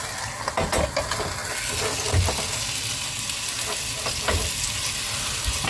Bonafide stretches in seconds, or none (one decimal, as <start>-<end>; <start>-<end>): 0.0-5.7